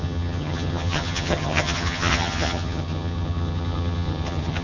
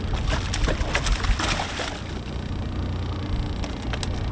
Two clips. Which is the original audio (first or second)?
second